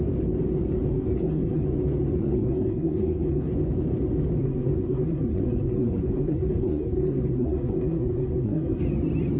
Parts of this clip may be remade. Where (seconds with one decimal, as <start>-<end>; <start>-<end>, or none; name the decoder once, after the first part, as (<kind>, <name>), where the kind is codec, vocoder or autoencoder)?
0.9-1.7 (codec, SNAC); 2.2-3.5; 4.4-8.8